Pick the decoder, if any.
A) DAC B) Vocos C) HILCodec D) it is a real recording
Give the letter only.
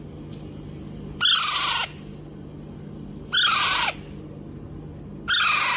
D